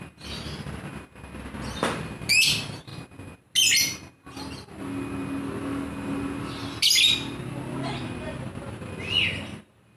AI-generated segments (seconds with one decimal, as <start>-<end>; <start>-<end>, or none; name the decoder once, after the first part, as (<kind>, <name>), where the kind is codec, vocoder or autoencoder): none

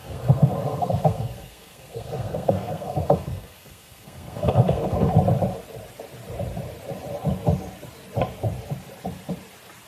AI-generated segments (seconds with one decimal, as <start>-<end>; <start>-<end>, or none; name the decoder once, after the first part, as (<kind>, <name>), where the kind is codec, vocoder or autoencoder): 0.0-5.1 (codec, SNAC)

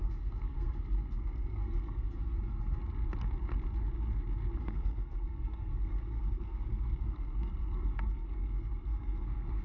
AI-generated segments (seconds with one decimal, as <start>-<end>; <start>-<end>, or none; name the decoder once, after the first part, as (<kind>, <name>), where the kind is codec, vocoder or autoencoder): 0.0-2.8 (codec, SNAC); 4.6-9.6

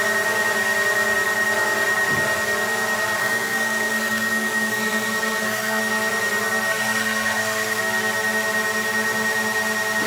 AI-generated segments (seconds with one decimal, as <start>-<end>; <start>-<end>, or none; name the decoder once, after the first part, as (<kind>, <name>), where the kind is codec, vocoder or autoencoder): 3.2-5.8 (codec, SNAC); 6.7-7.8